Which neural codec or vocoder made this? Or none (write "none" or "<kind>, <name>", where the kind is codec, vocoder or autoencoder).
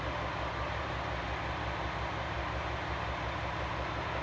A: none